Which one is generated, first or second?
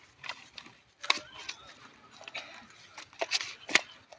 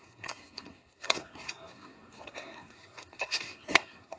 second